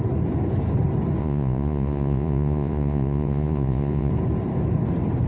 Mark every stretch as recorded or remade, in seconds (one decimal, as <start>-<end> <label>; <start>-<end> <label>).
0.0-1.2 recorded; 1.2-4.1 remade; 4.1-5.3 recorded